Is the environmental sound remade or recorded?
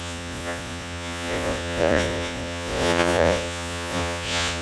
remade